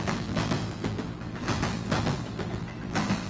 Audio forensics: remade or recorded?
remade